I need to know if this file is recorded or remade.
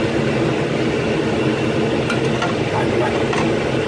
recorded